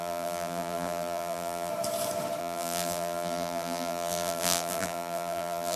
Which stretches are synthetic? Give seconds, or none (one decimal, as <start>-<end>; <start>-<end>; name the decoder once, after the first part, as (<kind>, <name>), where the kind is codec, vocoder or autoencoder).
0.0-1.7 (vocoder, BigVGAN v2); 2.4-5.8